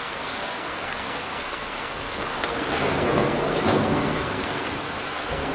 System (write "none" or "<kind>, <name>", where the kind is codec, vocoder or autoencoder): codec, SNAC